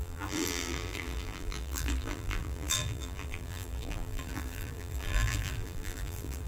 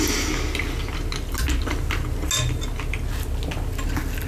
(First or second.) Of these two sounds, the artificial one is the first